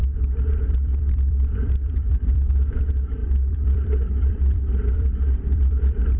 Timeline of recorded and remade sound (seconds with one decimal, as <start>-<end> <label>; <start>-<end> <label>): 0.0-0.5 recorded; 0.5-6.2 remade